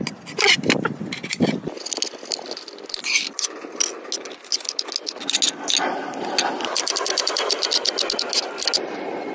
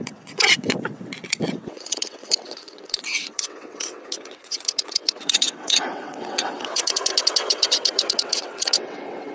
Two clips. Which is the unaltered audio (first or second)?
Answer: first